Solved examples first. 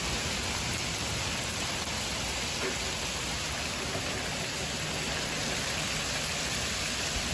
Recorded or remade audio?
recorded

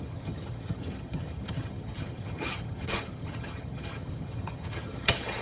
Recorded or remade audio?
remade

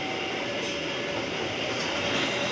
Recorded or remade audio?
recorded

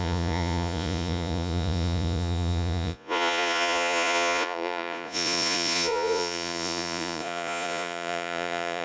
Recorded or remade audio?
remade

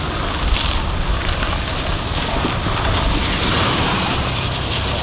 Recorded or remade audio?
remade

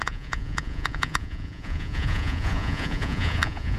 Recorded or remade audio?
remade